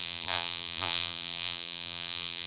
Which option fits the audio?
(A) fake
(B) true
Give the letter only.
A